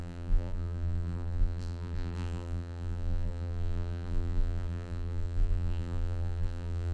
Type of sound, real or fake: fake